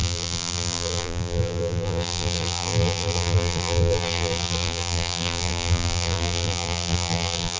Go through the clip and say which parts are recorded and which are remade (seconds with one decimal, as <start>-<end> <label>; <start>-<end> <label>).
0.0-7.6 remade